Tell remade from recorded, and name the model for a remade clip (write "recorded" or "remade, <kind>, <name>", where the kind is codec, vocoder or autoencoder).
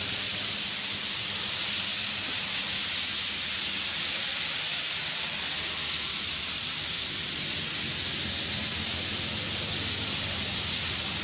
recorded